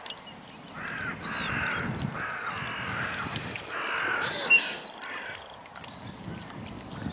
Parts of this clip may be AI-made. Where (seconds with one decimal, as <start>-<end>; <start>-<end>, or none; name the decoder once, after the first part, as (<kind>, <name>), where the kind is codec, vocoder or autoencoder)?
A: none